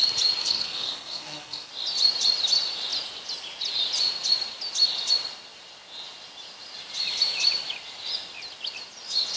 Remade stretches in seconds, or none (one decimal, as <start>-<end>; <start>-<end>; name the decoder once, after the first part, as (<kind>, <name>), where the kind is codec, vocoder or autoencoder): 0.4-1.7 (codec, SNAC)

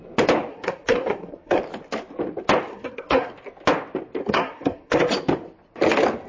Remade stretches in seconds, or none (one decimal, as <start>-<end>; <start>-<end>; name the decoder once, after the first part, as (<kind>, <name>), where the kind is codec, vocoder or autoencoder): 0.5-1.6 (codec, SNAC); 2.7-3.3; 4.2-5.1